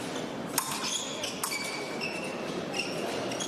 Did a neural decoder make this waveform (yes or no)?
no